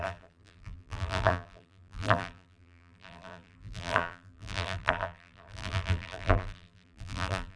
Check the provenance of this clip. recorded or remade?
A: remade